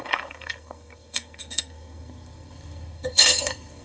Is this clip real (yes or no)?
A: no